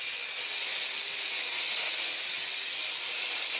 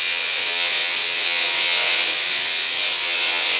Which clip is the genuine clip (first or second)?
first